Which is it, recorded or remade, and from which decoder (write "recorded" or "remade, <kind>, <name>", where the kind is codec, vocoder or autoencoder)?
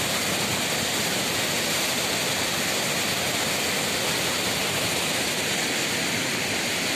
recorded